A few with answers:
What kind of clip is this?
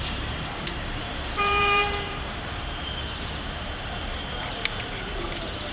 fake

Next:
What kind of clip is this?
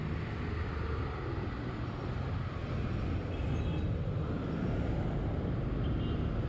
real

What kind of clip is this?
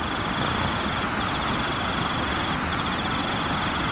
real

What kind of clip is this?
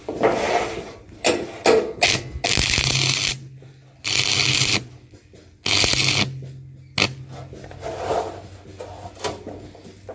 real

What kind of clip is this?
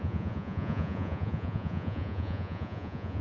fake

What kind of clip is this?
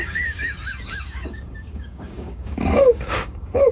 fake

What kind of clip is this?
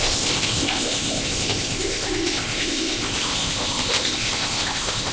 fake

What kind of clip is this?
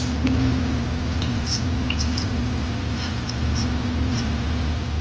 real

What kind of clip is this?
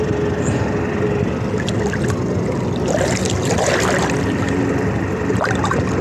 real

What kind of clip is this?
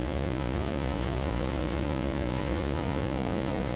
fake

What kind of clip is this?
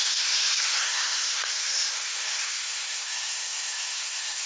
fake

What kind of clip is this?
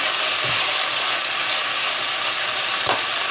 real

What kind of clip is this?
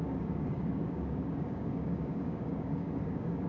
fake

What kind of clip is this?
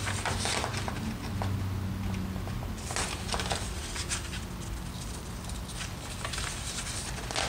real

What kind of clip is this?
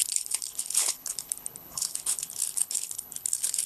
fake